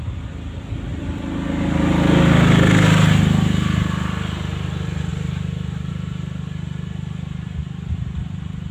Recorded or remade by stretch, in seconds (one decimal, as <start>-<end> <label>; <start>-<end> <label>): 0.0-5.1 recorded; 5.1-5.9 remade; 5.9-8.7 recorded